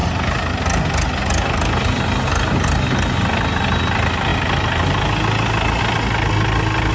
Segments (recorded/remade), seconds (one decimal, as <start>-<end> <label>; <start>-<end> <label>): 0.0-6.9 recorded